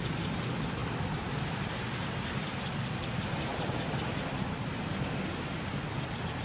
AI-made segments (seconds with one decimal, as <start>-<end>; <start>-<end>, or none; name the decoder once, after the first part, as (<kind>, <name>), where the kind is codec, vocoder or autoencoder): 0.8-2.9 (vocoder, BigVGAN v2); 3.5-4.0